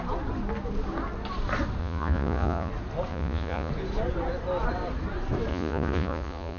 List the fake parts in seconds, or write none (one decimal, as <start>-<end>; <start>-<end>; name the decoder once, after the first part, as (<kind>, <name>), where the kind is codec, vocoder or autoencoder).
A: 1.8-2.7 (vocoder, Vocos); 3.1-3.7; 5.5-6.6